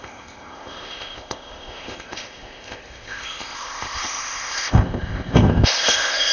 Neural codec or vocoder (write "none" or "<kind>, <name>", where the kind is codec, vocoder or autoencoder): codec, ZipCodec